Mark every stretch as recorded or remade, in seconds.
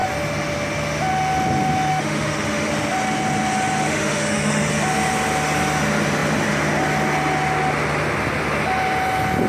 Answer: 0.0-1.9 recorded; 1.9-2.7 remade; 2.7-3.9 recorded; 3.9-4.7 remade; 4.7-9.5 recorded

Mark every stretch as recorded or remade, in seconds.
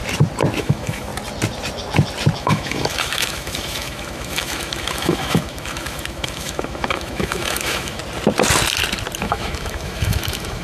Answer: 0.0-0.6 recorded; 0.6-1.1 remade; 1.1-2.4 recorded; 2.4-8.0 remade; 8.0-9.2 recorded; 9.2-10.6 remade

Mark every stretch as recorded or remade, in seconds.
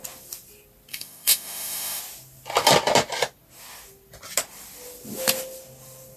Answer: 0.0-0.9 recorded; 0.9-2.0 remade; 2.0-6.2 recorded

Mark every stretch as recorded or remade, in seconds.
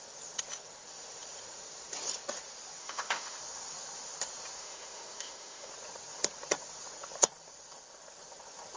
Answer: 0.0-2.8 recorded; 2.8-3.4 remade; 3.4-4.6 recorded; 4.6-5.7 remade; 5.7-8.8 recorded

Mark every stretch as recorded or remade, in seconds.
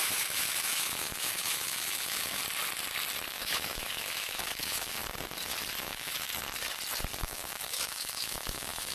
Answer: 0.0-2.4 remade; 2.4-3.3 recorded; 3.3-5.0 remade; 5.0-5.8 recorded; 5.8-6.3 remade; 6.3-7.2 recorded; 7.2-8.9 remade